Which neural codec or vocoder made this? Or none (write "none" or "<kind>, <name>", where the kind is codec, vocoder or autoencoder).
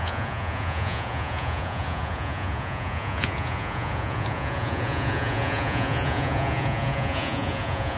vocoder, Vocos